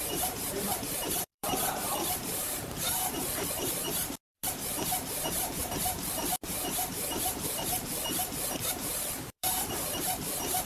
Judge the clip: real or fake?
fake